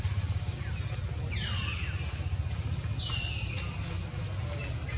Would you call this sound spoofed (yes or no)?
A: no